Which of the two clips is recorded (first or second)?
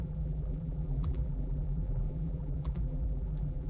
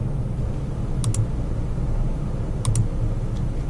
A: second